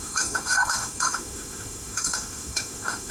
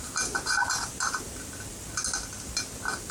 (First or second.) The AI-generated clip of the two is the first